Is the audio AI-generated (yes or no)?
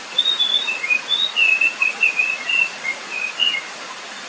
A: yes